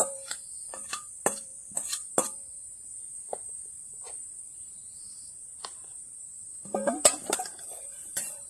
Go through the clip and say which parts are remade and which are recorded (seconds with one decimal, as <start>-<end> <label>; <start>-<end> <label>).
0.0-3.0 remade; 3.0-3.7 recorded; 3.7-8.5 remade